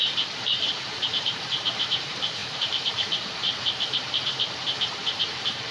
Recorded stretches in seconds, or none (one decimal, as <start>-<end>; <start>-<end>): none

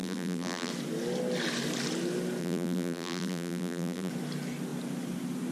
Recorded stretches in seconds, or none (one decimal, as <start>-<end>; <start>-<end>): 0.7-2.4; 4.1-5.5

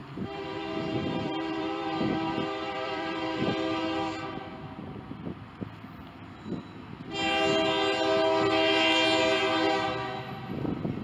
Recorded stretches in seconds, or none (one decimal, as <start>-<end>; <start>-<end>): 3.5-11.0

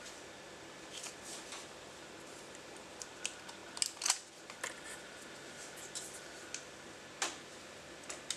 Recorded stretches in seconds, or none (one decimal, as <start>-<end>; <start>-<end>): 0.0-8.4

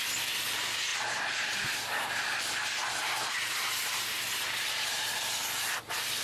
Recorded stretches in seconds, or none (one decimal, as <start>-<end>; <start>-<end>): 0.9-2.4; 2.8-3.3